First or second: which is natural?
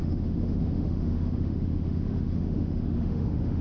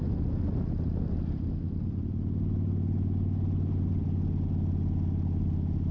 second